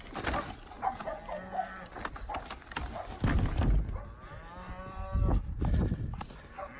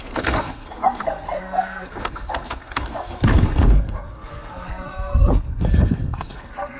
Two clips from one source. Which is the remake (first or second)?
second